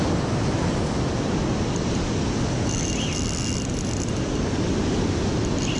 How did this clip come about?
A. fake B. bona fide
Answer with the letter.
B